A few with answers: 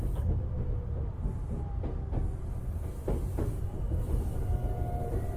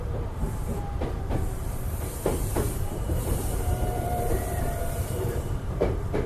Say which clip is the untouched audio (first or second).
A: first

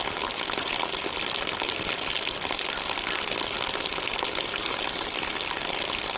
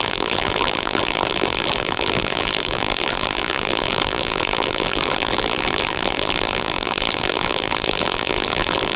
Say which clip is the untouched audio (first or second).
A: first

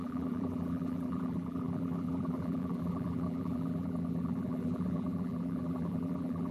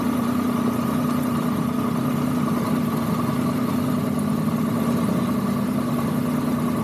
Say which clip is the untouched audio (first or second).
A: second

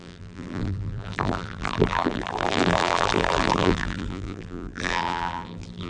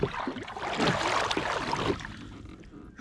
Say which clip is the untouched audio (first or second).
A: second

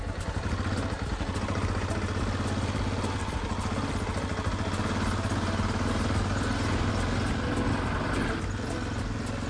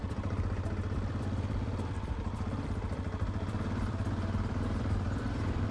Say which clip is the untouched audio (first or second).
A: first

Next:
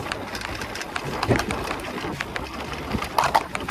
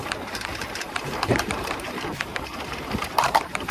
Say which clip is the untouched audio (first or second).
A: first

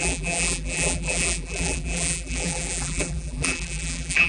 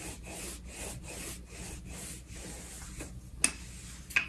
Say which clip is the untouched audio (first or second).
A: second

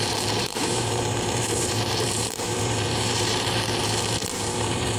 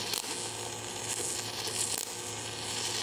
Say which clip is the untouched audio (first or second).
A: second